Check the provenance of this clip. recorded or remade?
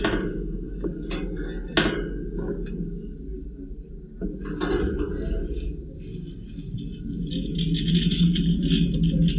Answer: recorded